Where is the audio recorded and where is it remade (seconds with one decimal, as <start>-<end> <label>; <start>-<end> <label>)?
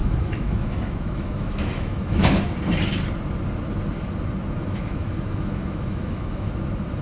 0.0-2.2 remade; 2.2-4.6 recorded; 4.6-6.5 remade; 6.5-7.0 recorded